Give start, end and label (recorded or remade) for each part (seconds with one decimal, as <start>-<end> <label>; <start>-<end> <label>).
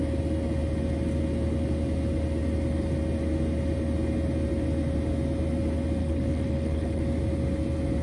0.0-6.0 recorded; 6.0-7.0 remade; 7.0-8.0 recorded